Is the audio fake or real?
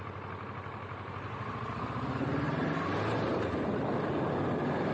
real